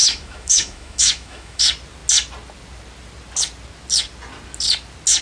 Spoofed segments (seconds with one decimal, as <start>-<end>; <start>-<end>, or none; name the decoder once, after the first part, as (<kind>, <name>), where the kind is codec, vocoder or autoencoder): 0.0-1.6 (autoencoder, DAC-VAE)